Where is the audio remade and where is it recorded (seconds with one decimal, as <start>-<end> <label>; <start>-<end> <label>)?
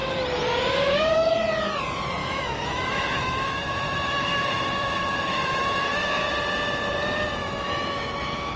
0.0-2.2 recorded; 2.2-6.3 remade; 6.3-7.4 recorded; 7.4-8.6 remade